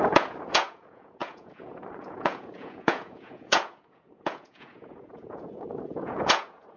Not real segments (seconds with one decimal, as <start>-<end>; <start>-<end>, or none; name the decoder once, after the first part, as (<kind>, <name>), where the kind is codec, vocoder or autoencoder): 0.0-6.8 (vocoder, Vocos)